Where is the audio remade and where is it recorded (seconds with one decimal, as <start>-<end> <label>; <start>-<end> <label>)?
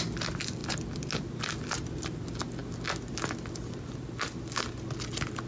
0.0-5.5 recorded